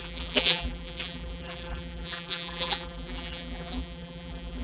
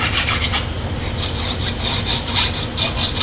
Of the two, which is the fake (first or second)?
first